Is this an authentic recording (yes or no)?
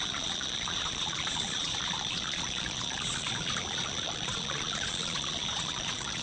no